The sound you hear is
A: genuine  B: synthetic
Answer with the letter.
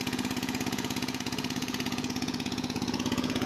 B